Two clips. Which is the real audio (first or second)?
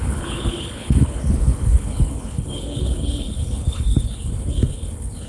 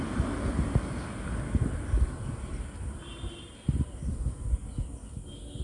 second